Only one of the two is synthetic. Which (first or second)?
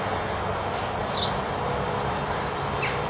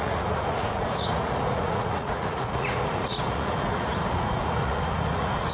second